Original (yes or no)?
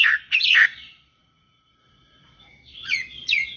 no